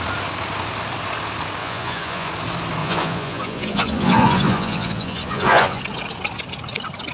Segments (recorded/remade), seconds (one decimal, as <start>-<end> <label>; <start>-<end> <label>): 0.0-1.6 recorded; 1.6-2.3 remade; 2.3-2.8 recorded; 2.8-5.8 remade; 5.8-7.1 recorded

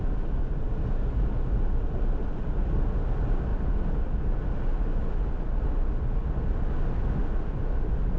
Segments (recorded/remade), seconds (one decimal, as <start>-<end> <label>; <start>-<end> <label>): 0.0-8.2 recorded

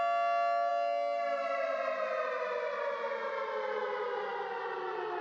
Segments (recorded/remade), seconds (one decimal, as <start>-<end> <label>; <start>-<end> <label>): 0.0-5.2 recorded

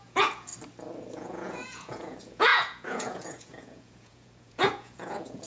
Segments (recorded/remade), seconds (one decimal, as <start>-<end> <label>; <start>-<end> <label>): 0.0-0.5 remade; 0.5-1.1 recorded; 1.1-5.5 remade

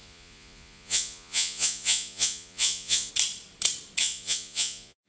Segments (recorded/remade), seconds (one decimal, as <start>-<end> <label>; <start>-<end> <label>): 0.0-3.1 remade; 3.1-4.0 recorded; 4.0-5.1 remade

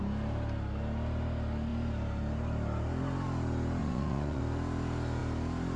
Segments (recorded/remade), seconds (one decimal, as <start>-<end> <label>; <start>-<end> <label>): 0.0-3.8 recorded; 3.8-4.4 remade; 4.4-5.8 recorded

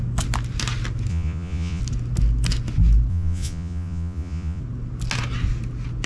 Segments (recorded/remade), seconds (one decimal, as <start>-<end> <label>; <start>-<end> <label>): 0.0-1.1 recorded; 1.1-1.8 remade; 1.8-3.1 recorded; 3.1-4.6 remade; 4.6-6.1 recorded

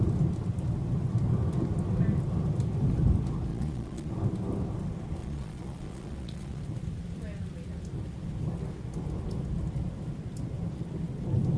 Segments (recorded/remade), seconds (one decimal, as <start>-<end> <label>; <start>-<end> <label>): 0.0-3.5 recorded; 3.5-4.1 remade; 4.1-5.2 recorded; 5.2-6.6 remade; 6.6-11.6 recorded